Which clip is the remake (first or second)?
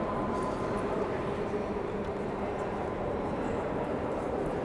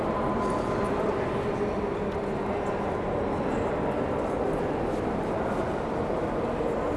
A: first